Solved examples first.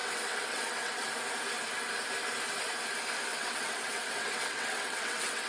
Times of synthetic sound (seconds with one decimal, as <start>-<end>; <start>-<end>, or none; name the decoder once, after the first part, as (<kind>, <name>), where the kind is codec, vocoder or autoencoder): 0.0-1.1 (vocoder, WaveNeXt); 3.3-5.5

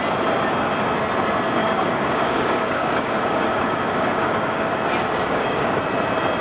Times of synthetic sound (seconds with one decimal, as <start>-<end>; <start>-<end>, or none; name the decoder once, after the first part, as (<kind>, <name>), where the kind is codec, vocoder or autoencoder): 1.6-4.8 (codec, DAC); 5.2-5.8

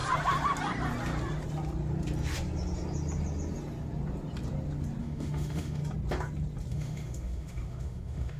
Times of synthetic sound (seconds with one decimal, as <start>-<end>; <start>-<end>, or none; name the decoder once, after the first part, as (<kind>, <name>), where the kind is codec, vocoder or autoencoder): 5.0-5.8 (autoencoder, DAC-VAE); 6.7-8.4

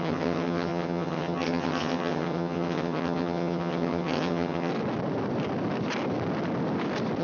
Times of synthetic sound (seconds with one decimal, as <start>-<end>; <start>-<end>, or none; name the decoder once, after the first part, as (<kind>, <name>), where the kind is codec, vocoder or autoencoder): 0.0-4.7 (vocoder, HiFi-GAN)

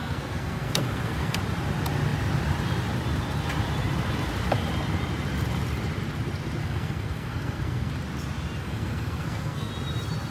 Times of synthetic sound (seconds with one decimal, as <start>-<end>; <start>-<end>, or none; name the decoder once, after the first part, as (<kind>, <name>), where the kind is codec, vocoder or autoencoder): 0.0-1.4 (codec, SNAC); 6.6-7.9; 8.6-9.7